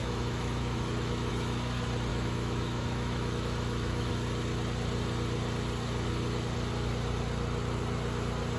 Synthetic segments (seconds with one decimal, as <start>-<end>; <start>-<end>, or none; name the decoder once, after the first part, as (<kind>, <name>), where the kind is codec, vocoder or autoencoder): 0.0-1.3 (autoencoder, DAC-VAE); 2.1-4.1